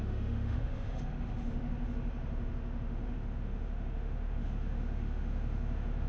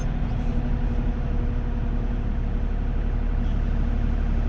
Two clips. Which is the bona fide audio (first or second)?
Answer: second